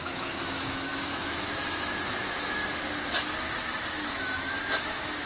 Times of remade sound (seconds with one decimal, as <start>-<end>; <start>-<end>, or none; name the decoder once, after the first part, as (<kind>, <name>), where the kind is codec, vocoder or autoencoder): 0.0-2.6 (autoencoder, DAC-VAE); 3.9-5.3